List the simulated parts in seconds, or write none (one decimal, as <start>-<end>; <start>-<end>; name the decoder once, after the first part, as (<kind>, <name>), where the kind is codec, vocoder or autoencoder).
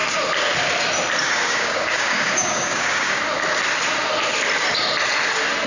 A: 1.2-3.2 (codec, DAC)